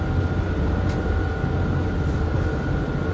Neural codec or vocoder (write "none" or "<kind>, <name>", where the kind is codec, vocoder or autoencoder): none